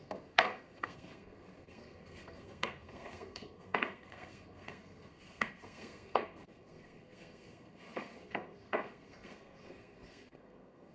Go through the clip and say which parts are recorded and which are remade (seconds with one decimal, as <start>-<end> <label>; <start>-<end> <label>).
0.0-10.9 remade